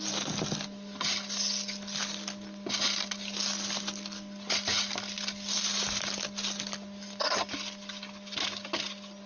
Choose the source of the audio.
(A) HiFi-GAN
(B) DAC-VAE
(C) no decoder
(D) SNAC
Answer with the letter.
C